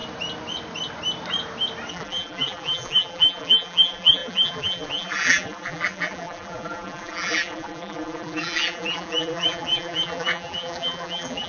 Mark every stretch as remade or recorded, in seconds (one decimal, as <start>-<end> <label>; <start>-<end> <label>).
0.0-1.9 recorded; 1.9-11.5 remade

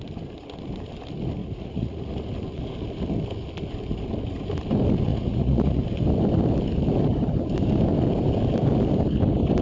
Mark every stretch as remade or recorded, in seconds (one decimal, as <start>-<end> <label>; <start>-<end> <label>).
0.0-1.4 recorded; 1.4-2.1 remade; 2.1-5.1 recorded; 5.1-5.8 remade; 5.8-9.6 recorded

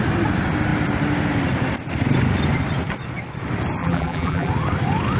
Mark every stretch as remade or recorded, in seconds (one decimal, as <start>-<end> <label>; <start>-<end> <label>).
0.0-3.8 recorded; 3.8-4.5 remade; 4.5-5.2 recorded

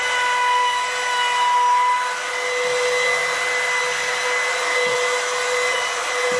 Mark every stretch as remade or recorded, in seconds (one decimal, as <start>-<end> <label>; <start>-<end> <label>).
0.0-3.2 recorded; 3.2-3.8 remade; 3.8-6.4 recorded